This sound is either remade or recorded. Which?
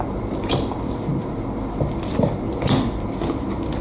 recorded